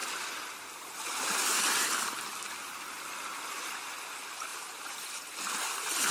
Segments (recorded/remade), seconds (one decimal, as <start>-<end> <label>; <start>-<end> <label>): 0.0-4.5 recorded; 4.5-5.2 remade; 5.2-6.1 recorded